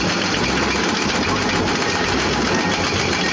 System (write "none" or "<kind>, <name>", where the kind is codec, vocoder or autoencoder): none